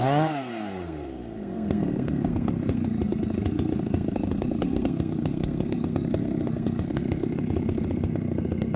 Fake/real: fake